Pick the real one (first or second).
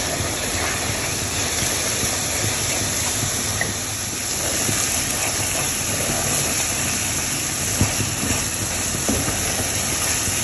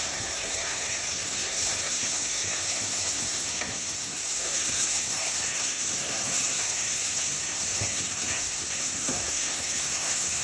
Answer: first